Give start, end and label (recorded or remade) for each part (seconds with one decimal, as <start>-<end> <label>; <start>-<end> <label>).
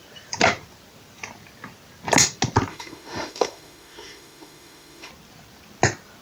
0.0-2.7 recorded; 2.7-5.1 remade; 5.1-6.2 recorded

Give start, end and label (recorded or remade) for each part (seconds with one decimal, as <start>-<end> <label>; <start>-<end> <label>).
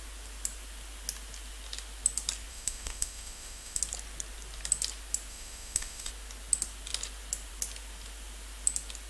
0.0-2.5 recorded; 2.5-3.8 remade; 3.8-5.3 recorded; 5.3-6.1 remade; 6.1-9.1 recorded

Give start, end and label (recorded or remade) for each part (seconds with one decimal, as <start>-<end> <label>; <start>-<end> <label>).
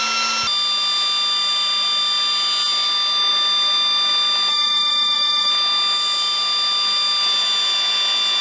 0.0-4.5 recorded; 4.5-5.5 remade; 5.5-8.4 recorded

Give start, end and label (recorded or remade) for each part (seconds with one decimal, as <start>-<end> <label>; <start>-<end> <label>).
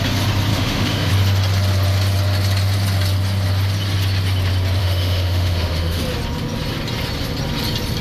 0.0-0.5 recorded; 0.5-1.1 remade; 1.1-4.8 recorded; 4.8-6.0 remade; 6.0-8.0 recorded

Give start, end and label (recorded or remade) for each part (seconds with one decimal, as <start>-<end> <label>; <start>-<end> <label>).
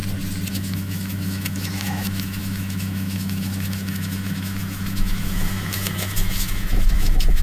0.0-0.5 recorded; 0.5-7.4 remade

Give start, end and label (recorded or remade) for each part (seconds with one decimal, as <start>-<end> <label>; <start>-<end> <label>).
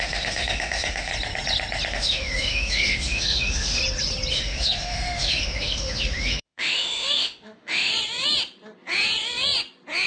0.0-1.1 remade; 1.1-1.9 recorded; 1.9-3.8 remade; 3.8-4.3 recorded; 4.3-7.9 remade; 7.9-10.1 recorded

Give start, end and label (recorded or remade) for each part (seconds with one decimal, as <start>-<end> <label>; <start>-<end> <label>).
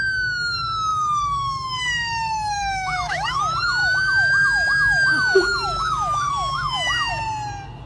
0.0-0.9 recorded; 0.9-3.4 remade; 3.4-3.8 recorded; 3.8-7.1 remade; 7.1-7.9 recorded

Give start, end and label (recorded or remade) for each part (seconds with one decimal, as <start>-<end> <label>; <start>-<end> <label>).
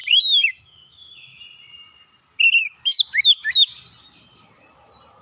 0.0-1.4 remade; 1.4-2.6 recorded; 2.6-3.7 remade; 3.7-5.2 recorded